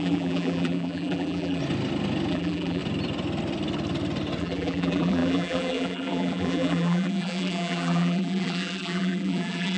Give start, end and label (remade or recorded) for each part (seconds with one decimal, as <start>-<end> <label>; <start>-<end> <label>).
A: 0.0-1.6 remade; 1.6-2.3 recorded; 2.3-2.8 remade; 2.8-4.4 recorded; 4.4-9.8 remade